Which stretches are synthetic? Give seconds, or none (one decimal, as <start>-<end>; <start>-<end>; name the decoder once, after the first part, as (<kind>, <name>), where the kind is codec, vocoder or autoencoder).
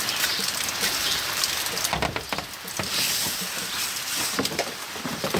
0.0-1.4 (vocoder, BigVGAN v2); 3.1-5.4